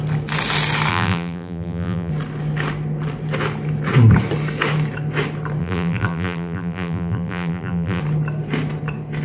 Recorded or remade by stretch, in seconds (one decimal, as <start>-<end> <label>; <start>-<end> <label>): 0.0-0.9 recorded; 0.9-2.1 remade; 2.1-5.6 recorded; 5.6-8.0 remade; 8.0-9.2 recorded